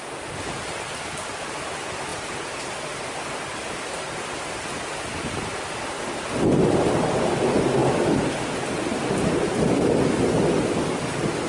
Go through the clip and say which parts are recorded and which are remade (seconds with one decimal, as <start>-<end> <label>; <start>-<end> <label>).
0.0-11.5 recorded